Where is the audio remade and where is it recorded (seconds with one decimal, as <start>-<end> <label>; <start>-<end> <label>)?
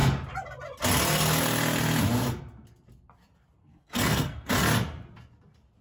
0.0-3.6 recorded; 3.6-4.5 remade; 4.5-5.8 recorded